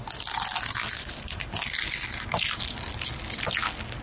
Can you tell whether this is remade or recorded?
recorded